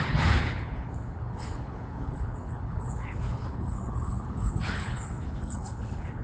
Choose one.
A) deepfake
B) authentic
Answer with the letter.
A